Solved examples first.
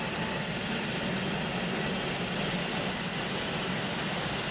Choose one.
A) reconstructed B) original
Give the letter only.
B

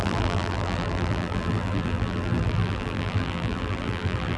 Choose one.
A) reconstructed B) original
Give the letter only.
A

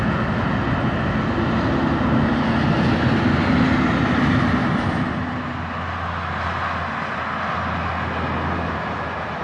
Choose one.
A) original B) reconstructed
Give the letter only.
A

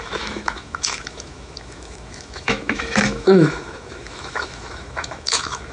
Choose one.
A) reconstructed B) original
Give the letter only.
A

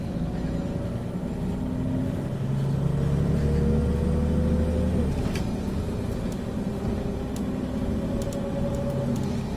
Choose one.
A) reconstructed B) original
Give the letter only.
B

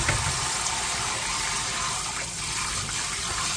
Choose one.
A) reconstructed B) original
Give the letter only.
B